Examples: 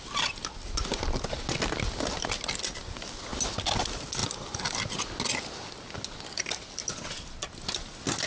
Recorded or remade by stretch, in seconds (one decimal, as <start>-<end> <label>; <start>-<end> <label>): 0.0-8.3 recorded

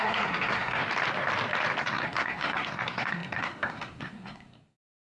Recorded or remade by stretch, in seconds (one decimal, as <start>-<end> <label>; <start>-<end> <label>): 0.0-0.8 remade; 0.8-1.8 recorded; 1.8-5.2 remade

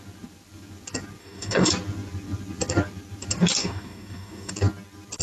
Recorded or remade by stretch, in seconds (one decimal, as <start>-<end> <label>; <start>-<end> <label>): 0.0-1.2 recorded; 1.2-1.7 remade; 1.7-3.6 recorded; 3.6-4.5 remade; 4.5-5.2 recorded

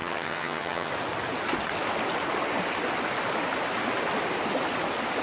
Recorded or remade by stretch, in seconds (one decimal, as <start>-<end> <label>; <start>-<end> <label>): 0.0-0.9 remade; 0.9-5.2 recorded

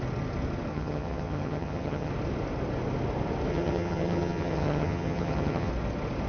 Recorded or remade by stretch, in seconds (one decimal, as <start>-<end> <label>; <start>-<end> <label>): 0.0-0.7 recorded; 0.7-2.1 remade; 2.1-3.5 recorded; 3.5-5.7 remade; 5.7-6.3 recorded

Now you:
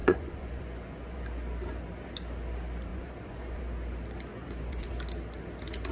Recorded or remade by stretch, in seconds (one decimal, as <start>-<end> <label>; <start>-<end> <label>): 0.0-1.2 remade; 1.2-2.9 recorded; 2.9-3.6 remade; 3.6-4.3 recorded; 4.3-4.9 remade; 4.9-5.9 recorded